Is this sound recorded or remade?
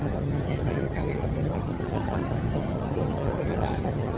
remade